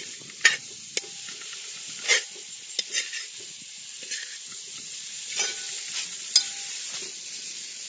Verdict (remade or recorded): recorded